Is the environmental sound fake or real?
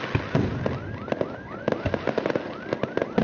real